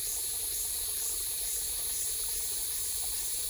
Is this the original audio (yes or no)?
no